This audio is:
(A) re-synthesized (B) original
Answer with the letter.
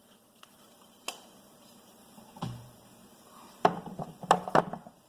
A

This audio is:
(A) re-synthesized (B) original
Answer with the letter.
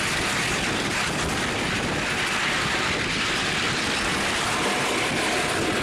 B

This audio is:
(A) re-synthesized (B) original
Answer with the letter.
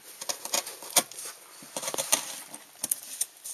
B